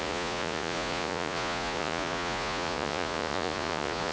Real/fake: fake